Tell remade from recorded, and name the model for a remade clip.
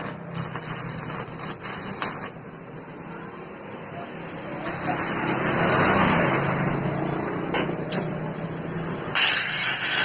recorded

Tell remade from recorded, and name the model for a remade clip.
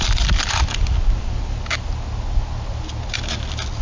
recorded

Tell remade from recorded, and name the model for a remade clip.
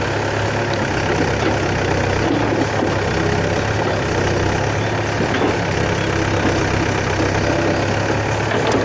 recorded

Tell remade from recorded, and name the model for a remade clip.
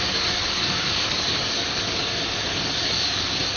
remade, codec, DAC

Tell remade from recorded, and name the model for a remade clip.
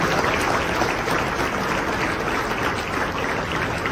recorded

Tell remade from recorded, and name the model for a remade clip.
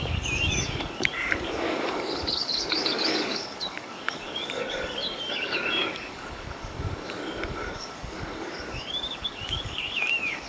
remade, codec, DAC